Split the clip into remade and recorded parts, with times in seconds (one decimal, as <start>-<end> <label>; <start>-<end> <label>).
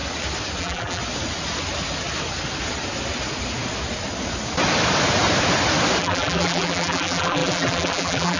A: 0.0-0.6 recorded; 0.6-1.0 remade; 1.0-6.0 recorded; 6.0-8.4 remade